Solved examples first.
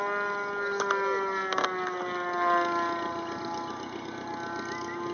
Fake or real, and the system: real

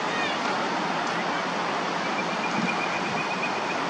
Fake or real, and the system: real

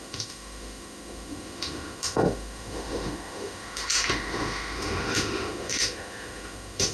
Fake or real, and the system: fake, autoencoder, DAC-VAE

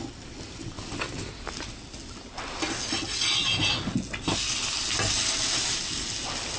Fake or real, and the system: real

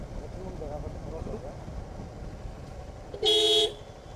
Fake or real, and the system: real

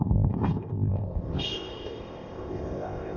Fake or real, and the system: fake, codec, ZipCodec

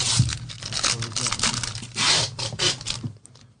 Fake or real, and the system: real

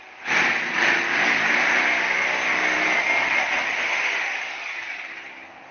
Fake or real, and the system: fake, vocoder, BigVGAN v2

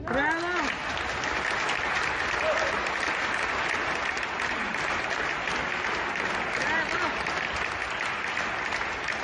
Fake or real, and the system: real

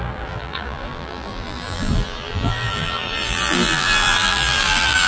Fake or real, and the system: fake, vocoder, BigVGAN v2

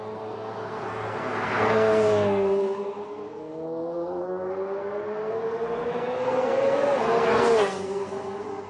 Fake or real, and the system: fake, codec, SNAC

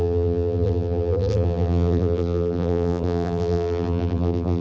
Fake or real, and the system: fake, vocoder, BigVGAN v2